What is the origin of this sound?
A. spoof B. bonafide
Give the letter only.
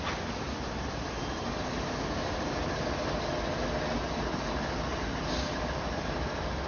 B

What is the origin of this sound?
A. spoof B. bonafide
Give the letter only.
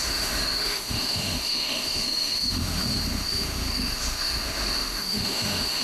A